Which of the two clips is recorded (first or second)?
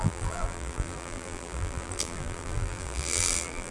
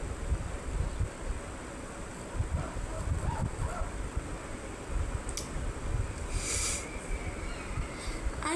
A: second